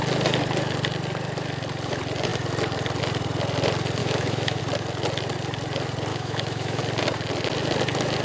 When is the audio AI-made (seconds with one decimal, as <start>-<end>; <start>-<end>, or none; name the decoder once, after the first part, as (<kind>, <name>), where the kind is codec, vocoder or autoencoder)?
4.0-4.6 (autoencoder, DAC-VAE); 6.1-6.8